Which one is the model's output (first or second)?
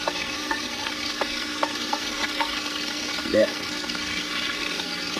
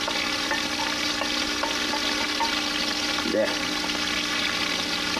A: first